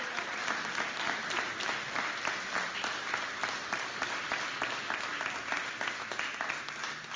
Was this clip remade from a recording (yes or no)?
no